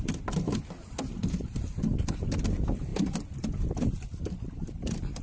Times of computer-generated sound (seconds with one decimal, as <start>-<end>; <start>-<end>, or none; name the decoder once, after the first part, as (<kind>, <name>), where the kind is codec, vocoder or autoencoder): 2.9-4.2 (vocoder, BigVGAN v2)